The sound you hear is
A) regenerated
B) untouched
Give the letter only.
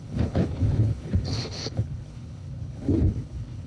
A